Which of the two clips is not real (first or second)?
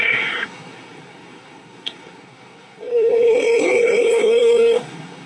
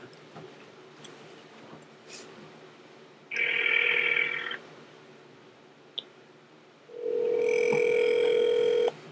first